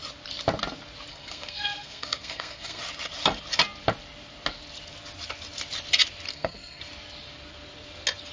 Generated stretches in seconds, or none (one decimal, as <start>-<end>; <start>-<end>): 1.1-2.8; 6.3-6.8